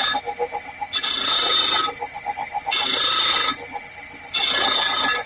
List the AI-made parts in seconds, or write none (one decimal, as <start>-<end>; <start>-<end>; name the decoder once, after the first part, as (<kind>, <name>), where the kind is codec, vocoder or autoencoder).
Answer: none